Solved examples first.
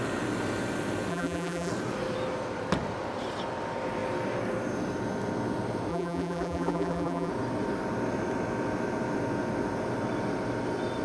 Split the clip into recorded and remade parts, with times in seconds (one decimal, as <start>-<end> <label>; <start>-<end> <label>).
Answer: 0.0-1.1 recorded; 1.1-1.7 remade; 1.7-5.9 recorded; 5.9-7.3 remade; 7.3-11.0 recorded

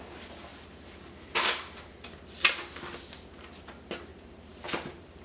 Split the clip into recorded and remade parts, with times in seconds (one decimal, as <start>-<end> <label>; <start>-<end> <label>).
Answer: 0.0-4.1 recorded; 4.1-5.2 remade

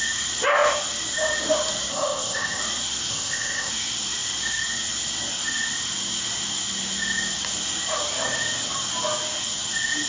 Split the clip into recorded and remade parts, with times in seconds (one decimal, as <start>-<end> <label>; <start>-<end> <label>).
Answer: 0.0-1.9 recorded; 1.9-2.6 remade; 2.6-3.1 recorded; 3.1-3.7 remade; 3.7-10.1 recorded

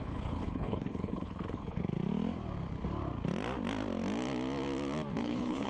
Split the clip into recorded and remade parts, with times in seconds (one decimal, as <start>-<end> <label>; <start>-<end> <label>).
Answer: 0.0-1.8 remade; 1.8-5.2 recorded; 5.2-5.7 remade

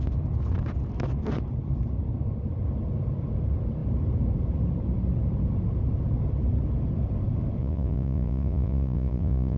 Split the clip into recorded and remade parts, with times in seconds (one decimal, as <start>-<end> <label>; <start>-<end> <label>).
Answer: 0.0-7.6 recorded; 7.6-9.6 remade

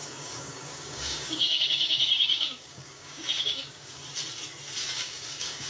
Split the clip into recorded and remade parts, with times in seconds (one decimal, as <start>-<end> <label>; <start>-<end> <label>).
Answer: 0.0-4.0 remade; 4.0-4.9 recorded; 4.9-5.7 remade

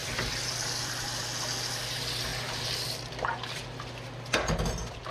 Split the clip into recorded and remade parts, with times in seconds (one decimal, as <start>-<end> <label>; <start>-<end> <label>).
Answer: 0.0-0.9 remade; 0.9-2.3 recorded; 2.3-3.1 remade; 3.1-5.1 recorded